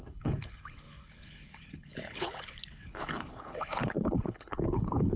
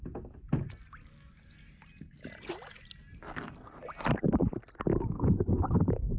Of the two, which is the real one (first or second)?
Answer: second